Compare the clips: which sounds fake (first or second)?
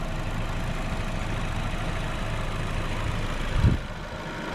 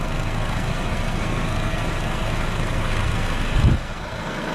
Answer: second